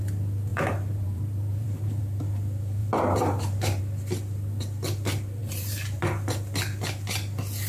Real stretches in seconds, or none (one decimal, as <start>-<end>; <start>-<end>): 0.0-0.5; 2.0-2.8; 3.8-5.4; 6.0-7.7